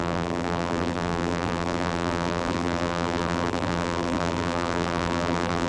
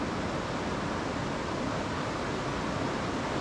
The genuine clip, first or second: second